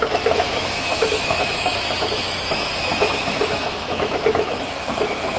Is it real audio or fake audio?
fake